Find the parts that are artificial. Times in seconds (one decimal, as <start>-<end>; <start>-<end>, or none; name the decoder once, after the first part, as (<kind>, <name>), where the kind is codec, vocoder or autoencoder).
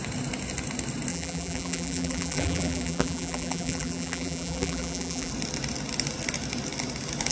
1.1-5.3 (vocoder, BigVGAN v2)